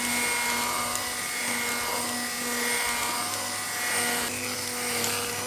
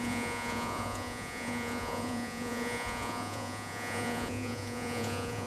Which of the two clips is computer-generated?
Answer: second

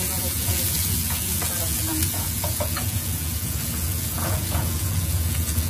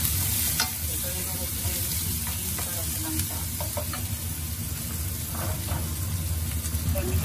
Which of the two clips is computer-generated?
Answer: first